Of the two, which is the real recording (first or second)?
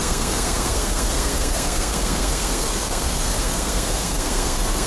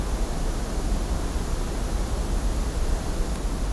second